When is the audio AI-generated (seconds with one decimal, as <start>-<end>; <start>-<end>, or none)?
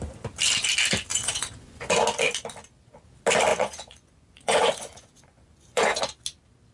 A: 1.1-1.9; 3.5-6.0